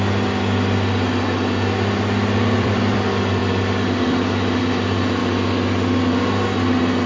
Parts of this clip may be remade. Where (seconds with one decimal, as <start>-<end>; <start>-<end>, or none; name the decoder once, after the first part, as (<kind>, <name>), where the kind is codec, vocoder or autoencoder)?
0.0-3.4 (vocoder, BigVGAN v2); 4.1-5.2